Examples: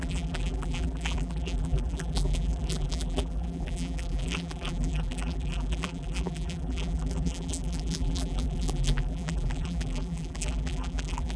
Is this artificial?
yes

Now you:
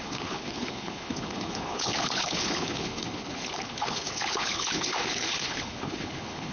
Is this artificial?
yes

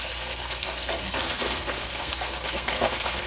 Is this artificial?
yes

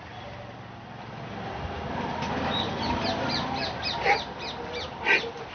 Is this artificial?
no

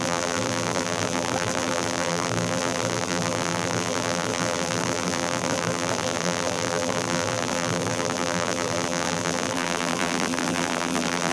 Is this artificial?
yes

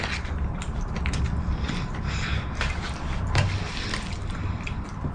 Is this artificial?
no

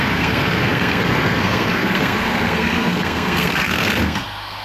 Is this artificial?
yes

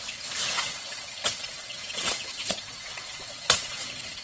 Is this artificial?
yes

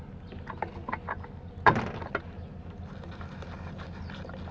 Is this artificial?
no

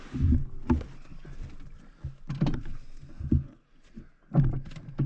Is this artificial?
no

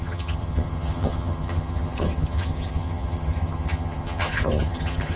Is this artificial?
yes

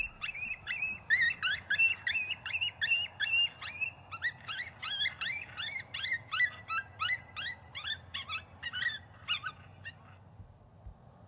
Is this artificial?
no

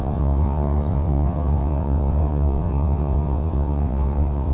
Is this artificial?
yes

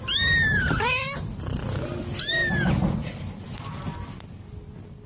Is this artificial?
no